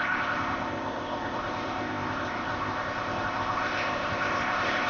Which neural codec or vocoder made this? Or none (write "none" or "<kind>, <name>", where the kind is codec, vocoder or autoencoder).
codec, ZipCodec